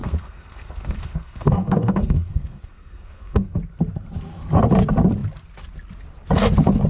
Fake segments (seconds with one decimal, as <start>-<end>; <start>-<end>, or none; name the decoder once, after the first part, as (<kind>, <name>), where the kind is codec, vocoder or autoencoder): 0.0-3.6 (codec, SNAC)